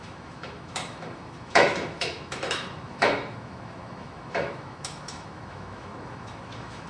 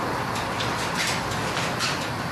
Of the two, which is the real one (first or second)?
second